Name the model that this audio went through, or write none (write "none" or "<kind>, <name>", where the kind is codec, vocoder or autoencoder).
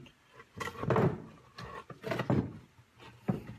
none